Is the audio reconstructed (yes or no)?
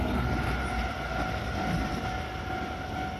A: no